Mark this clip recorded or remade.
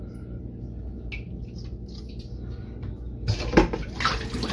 recorded